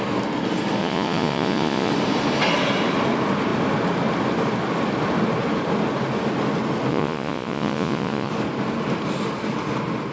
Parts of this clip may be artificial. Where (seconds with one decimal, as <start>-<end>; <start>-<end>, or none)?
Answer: 0.8-1.9; 6.9-8.3